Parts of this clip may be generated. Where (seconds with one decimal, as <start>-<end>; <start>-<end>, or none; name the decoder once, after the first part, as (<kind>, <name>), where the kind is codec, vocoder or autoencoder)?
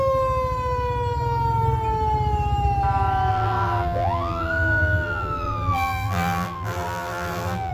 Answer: 3.3-7.7 (vocoder, BigVGAN v2)